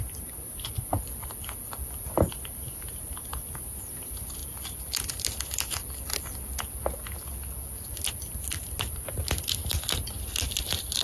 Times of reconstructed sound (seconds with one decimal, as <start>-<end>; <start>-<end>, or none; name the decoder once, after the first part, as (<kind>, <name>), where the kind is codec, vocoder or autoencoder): 0.0-0.9 (vocoder, BigVGAN v2); 2.3-4.4; 8.1-11.0